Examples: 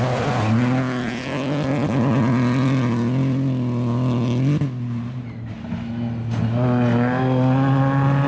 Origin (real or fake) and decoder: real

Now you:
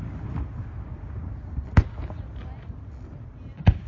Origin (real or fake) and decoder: real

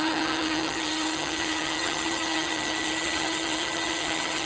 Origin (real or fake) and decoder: fake, vocoder, HiFi-GAN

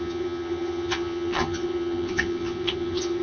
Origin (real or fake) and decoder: fake, vocoder, HiFi-GAN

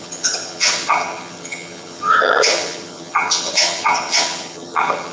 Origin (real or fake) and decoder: fake, vocoder, HiFi-GAN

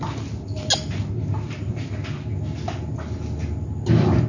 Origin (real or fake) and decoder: real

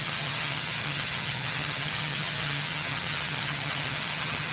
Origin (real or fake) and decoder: fake, vocoder, HiFi-GAN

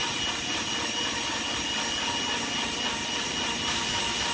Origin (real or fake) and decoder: real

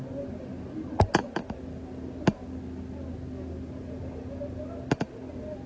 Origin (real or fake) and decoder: real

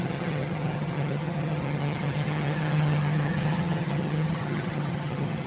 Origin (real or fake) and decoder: fake, vocoder, HiFi-GAN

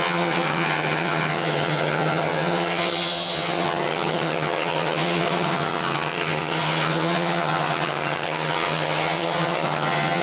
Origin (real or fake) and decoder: fake, vocoder, HiFi-GAN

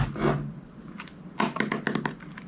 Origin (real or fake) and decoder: real